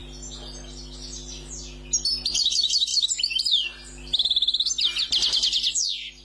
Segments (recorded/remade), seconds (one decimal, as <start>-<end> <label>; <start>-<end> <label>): 0.0-2.9 recorded; 2.9-4.7 remade; 4.7-6.2 recorded